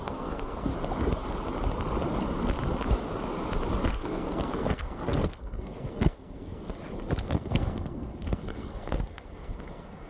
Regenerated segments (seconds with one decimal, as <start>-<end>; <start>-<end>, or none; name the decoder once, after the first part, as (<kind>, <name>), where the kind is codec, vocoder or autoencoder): 0.0-0.7 (codec, SNAC); 3.9-6.7; 7.2-10.1